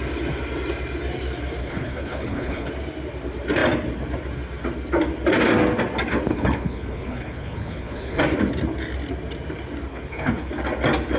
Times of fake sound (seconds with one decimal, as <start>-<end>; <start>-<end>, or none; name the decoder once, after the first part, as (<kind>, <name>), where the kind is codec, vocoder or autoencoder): 1.6-2.7 (codec, HILCodec); 6.3-8.2; 9.9-10.5